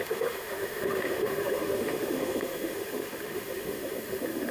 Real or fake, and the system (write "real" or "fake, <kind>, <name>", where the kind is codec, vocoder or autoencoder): fake, autoencoder, DAC-VAE